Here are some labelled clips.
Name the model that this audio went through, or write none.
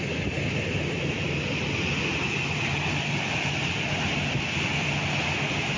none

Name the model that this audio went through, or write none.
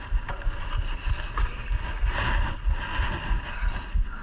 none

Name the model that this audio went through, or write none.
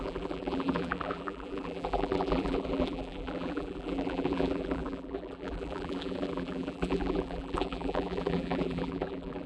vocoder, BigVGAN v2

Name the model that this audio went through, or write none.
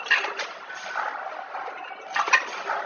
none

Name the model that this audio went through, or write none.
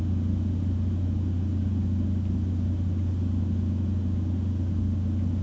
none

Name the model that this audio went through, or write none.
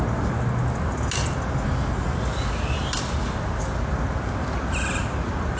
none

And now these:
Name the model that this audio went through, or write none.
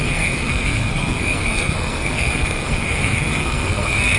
codec, SNAC